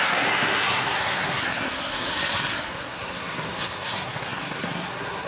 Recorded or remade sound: remade